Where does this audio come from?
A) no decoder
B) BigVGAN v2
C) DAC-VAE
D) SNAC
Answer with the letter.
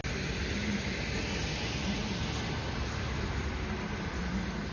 A